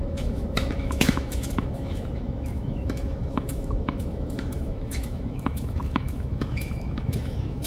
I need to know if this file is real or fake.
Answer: fake